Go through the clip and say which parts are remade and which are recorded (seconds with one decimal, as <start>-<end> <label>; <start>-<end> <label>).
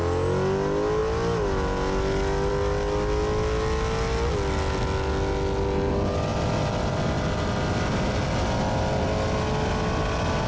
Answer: 0.0-10.5 recorded